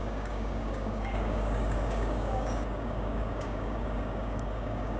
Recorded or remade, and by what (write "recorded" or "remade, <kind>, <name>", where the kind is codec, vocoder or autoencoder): remade, codec, DAC